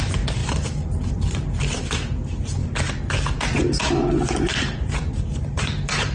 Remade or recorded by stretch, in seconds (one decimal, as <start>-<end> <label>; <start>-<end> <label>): 0.0-2.6 remade; 2.6-5.4 recorded; 5.4-6.1 remade